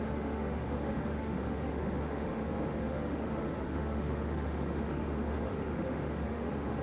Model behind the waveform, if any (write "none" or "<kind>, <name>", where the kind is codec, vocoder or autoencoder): autoencoder, DAC-VAE